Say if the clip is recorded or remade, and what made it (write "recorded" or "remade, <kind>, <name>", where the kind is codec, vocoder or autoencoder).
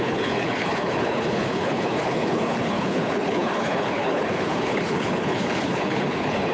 remade, codec, HILCodec